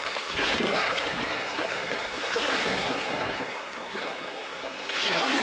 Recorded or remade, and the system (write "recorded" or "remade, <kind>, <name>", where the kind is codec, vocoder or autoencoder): remade, codec, SNAC